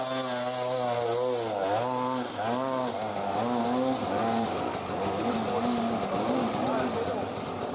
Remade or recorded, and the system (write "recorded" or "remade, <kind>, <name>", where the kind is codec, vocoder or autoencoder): recorded